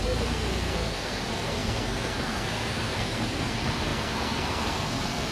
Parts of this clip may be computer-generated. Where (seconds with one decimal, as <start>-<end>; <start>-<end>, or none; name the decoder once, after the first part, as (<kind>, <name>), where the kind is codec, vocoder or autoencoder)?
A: 0.0-5.3 (codec, SNAC)